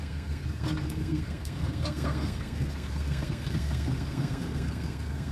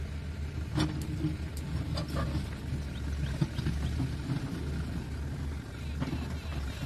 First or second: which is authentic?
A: second